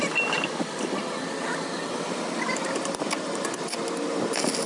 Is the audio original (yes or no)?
yes